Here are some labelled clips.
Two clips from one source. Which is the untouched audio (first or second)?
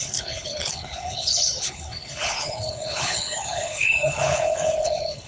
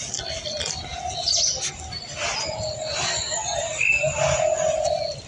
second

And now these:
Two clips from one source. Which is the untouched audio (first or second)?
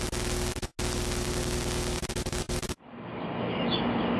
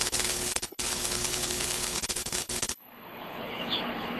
first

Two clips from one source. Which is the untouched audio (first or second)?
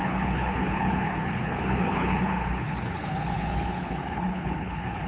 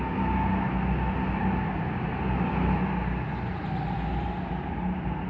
second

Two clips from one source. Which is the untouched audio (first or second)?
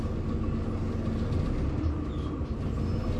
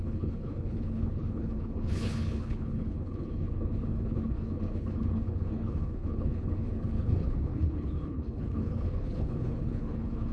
first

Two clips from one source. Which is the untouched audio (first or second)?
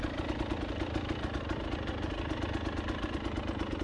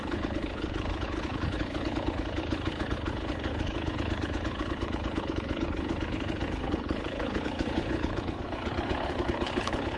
first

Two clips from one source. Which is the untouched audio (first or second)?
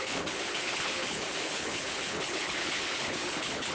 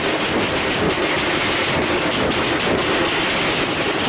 second